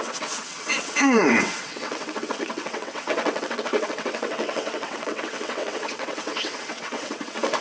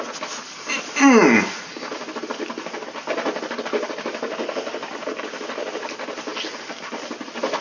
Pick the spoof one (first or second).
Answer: first